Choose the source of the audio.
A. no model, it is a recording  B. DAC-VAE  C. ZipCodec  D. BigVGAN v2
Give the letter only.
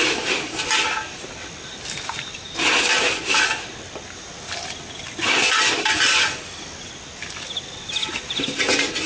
A